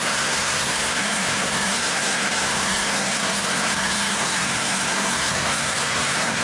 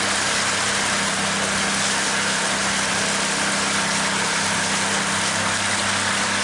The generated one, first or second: first